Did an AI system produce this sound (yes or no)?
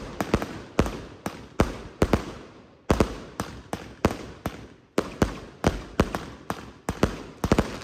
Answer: no